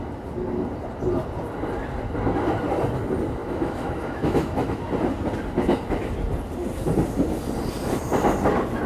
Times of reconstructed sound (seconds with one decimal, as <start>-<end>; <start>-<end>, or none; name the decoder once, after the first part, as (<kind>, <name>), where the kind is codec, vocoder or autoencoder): 3.4-4.8 (autoencoder, DAC-VAE)